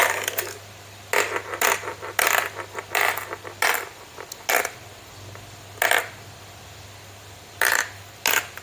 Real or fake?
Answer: real